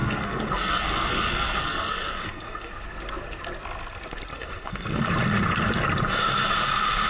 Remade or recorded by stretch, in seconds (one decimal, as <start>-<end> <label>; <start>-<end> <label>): 0.0-2.7 remade; 2.7-4.3 recorded; 4.3-5.0 remade; 5.0-7.1 recorded